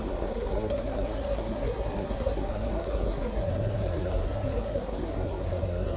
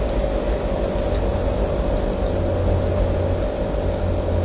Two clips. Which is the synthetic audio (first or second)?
first